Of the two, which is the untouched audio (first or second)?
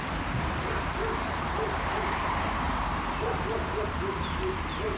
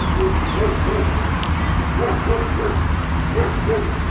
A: second